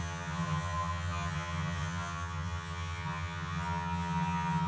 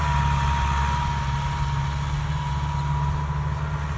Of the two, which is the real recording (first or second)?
second